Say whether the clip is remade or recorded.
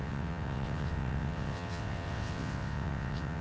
remade